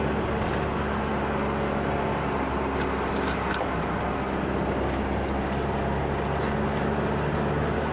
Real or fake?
real